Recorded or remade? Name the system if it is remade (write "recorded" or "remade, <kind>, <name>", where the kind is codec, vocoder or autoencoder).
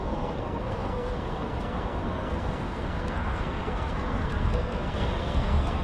remade, codec, SNAC